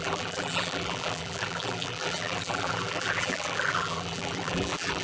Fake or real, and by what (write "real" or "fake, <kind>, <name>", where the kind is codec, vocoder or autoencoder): fake, vocoder, BigVGAN v2